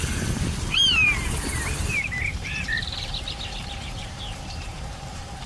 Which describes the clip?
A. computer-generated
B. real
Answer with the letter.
A